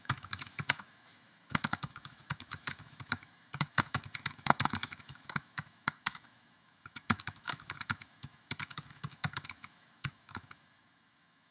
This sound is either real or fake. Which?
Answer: fake